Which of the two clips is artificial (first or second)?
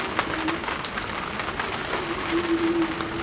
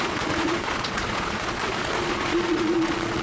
second